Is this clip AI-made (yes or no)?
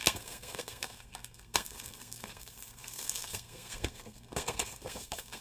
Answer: yes